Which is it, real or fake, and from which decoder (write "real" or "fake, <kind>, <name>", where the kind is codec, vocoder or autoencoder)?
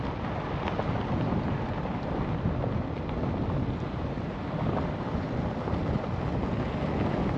real